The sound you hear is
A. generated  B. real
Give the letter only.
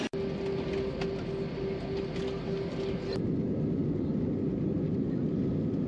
B